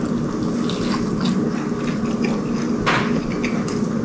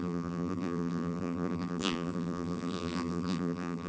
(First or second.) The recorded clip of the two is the first